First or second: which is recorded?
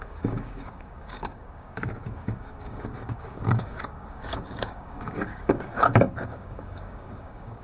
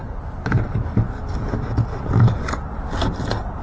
second